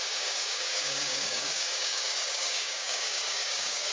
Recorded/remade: remade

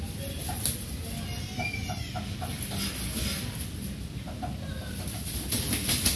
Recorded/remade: recorded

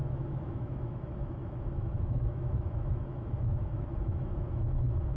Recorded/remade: remade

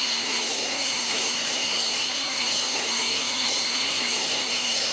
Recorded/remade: remade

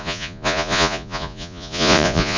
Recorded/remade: remade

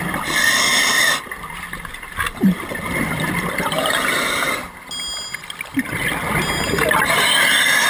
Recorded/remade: recorded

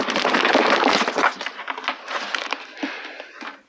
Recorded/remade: recorded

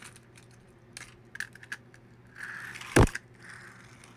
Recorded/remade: recorded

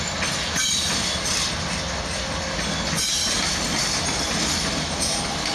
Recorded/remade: recorded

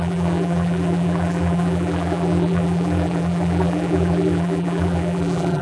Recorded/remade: remade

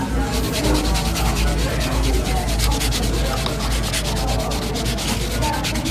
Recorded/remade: recorded